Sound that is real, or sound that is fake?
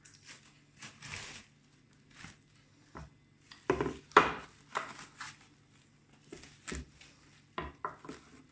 real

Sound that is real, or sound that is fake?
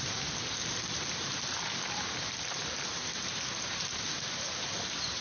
fake